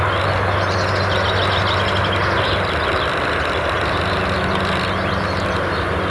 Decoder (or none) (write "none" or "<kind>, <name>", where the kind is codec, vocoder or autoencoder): none